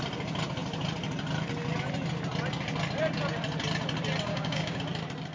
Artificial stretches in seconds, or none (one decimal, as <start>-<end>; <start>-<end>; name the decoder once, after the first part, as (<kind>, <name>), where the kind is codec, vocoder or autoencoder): 4.3-4.8 (codec, DAC)